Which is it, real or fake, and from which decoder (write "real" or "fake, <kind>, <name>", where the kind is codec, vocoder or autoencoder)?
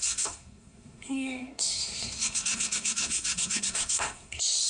fake, codec, SNAC